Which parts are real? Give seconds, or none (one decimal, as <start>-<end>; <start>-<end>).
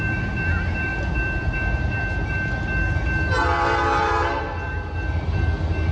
0.0-5.9